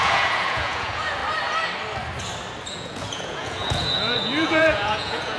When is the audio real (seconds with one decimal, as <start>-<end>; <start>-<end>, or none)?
1.2-2.7